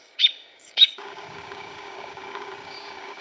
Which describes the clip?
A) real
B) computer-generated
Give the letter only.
B